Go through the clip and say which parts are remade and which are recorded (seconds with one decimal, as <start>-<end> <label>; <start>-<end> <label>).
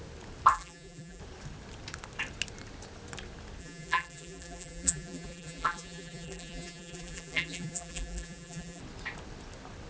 0.0-0.5 recorded; 0.5-1.2 remade; 1.2-3.6 recorded; 3.6-8.8 remade; 8.8-9.9 recorded